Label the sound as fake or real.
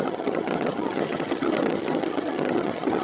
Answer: fake